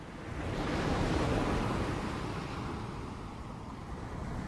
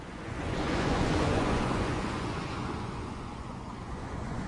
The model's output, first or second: second